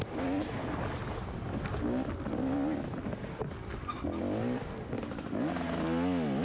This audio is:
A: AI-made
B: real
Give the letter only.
B